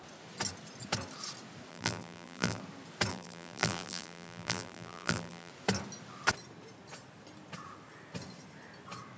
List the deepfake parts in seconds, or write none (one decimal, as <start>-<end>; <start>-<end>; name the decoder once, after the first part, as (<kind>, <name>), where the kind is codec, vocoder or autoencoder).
1.7-2.6 (vocoder, BigVGAN v2); 3.1-5.5